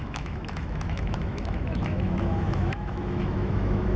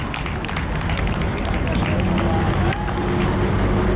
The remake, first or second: first